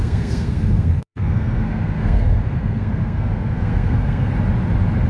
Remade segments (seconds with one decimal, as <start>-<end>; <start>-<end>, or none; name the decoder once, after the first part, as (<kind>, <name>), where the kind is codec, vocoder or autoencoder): 0.0-4.3 (codec, SNAC)